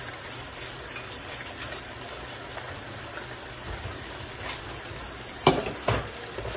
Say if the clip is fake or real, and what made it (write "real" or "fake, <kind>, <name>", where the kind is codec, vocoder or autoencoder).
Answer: real